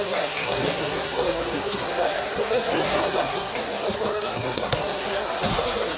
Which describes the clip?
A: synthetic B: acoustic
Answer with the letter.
A